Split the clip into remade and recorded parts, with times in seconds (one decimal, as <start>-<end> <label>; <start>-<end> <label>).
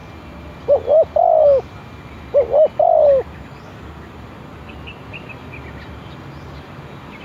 0.0-7.2 recorded